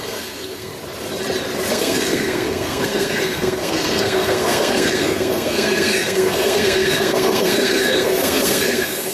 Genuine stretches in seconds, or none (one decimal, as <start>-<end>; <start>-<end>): 0.7-1.7